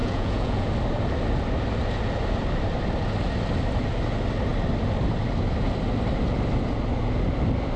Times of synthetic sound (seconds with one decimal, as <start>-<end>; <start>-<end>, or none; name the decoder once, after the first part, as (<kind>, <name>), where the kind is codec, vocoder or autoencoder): 0.0-0.7 (vocoder, Vocos)